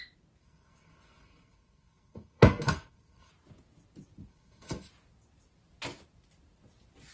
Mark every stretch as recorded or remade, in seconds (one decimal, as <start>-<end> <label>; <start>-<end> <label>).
0.0-0.4 recorded; 0.4-3.3 remade; 3.3-4.3 recorded; 4.3-4.9 remade; 4.9-7.1 recorded